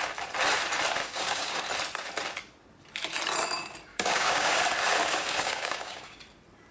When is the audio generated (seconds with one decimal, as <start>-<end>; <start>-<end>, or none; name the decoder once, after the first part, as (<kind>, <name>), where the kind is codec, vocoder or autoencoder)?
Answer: 1.0-1.6 (codec, DAC); 3.9-4.6; 5.0-6.2